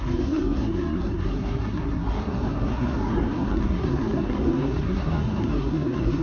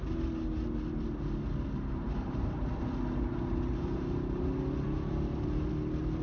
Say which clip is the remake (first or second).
first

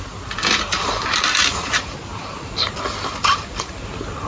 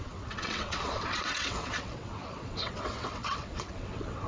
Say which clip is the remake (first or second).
second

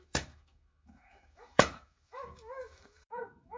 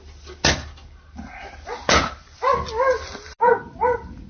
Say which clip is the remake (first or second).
first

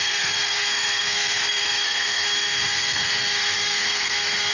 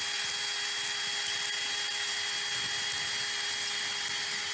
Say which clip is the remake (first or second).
first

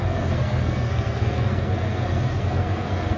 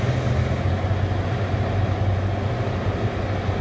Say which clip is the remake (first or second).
first